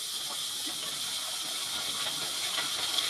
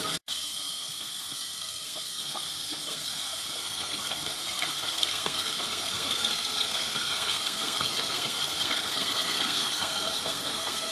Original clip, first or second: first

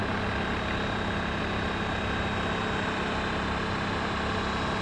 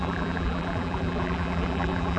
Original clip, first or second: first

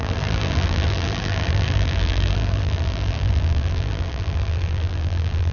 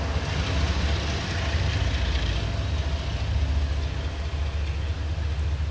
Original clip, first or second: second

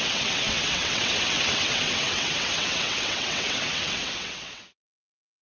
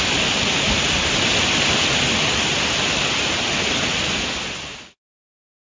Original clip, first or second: second